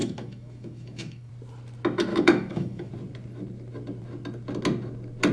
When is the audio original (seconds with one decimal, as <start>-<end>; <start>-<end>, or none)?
1.3-2.1; 2.9-5.3